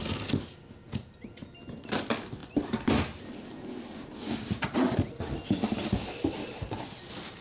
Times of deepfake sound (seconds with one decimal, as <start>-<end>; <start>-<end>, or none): none